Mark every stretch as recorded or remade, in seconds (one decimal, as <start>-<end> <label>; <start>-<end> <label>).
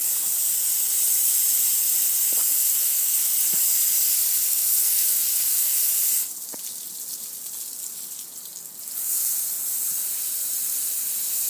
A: 0.0-2.6 recorded; 2.6-3.3 remade; 3.3-4.8 recorded; 4.8-5.8 remade; 5.8-11.5 recorded